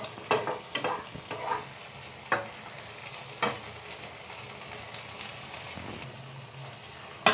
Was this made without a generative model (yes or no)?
yes